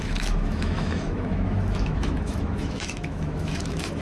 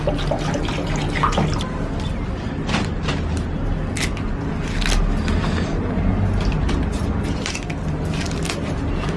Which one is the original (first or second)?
second